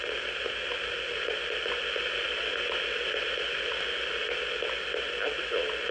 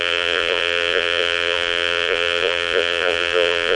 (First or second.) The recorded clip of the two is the first